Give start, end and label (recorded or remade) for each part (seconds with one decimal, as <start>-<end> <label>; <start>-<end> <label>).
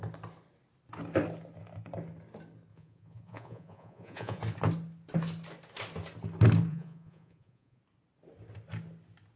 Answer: 0.0-2.7 recorded; 2.7-4.4 remade; 4.4-6.7 recorded; 6.7-7.8 remade; 7.8-9.4 recorded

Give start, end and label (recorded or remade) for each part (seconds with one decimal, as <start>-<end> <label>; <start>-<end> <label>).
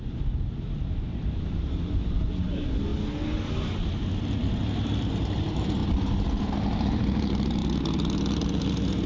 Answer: 0.0-2.9 remade; 2.9-4.2 recorded; 4.2-5.8 remade; 5.8-6.8 recorded; 6.8-7.6 remade; 7.6-8.6 recorded; 8.6-9.1 remade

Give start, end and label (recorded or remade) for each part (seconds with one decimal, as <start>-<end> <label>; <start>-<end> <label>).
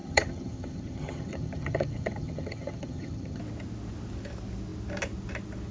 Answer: 0.0-3.4 remade; 3.4-5.7 recorded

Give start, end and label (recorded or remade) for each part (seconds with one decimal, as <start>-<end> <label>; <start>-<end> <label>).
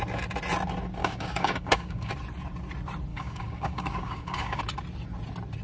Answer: 0.0-1.0 recorded; 1.0-2.1 remade; 2.1-3.1 recorded; 3.1-4.6 remade; 4.6-5.6 recorded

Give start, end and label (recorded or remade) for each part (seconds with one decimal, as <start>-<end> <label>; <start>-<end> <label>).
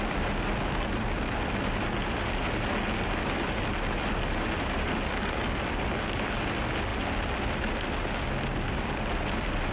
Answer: 0.0-9.7 recorded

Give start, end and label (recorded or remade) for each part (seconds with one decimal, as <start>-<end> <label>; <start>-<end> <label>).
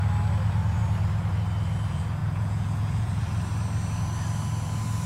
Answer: 0.0-2.2 recorded; 2.2-3.2 remade; 3.2-5.1 recorded